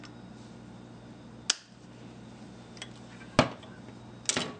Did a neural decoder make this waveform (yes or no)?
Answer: no